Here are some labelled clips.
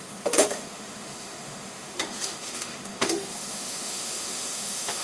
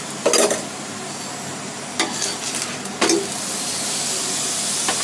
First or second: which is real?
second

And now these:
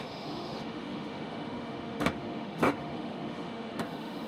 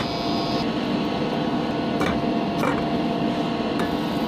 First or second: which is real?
second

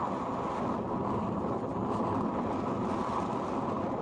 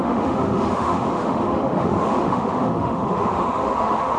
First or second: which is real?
first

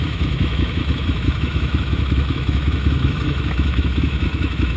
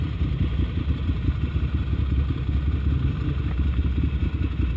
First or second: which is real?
second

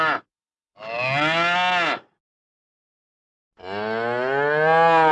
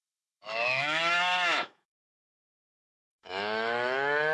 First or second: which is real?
first